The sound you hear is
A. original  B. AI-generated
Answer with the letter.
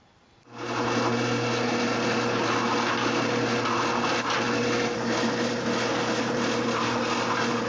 A